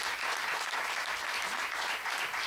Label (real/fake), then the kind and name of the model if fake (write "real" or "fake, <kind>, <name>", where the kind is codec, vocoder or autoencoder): real